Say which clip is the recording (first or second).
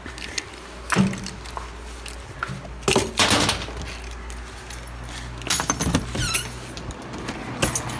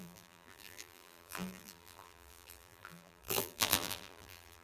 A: first